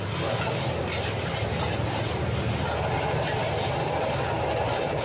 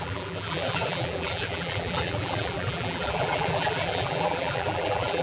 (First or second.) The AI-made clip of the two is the second